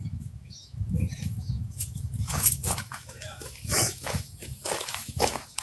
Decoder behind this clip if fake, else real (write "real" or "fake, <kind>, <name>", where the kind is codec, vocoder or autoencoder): fake, autoencoder, DAC-VAE